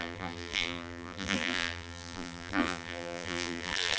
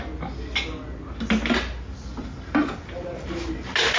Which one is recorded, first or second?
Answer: second